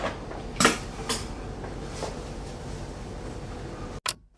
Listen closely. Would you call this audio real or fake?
real